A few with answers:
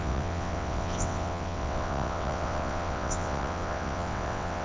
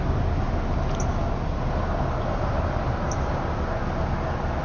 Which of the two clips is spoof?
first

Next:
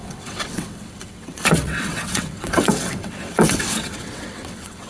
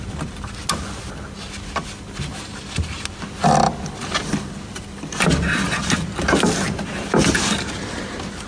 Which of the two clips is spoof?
first